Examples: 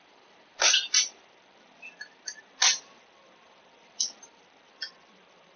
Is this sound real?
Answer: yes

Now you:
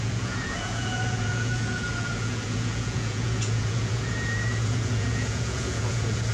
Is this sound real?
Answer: no